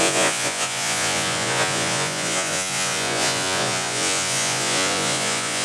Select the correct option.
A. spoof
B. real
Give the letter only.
A